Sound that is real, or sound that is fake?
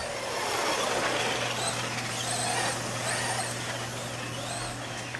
real